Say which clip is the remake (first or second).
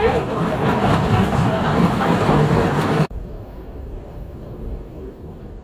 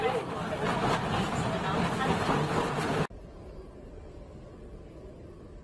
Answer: first